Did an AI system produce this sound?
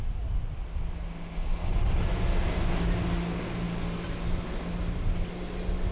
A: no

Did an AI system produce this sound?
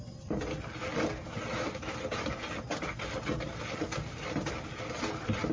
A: no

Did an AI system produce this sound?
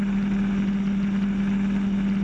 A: no